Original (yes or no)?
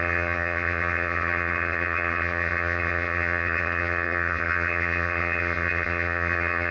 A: no